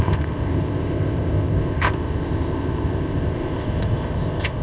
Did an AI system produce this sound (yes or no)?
yes